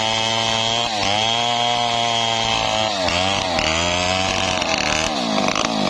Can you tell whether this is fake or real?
real